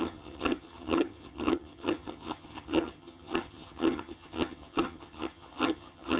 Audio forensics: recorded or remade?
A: remade